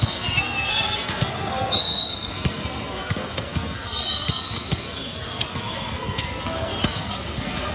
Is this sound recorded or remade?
remade